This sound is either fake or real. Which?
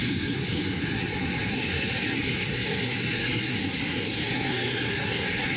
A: fake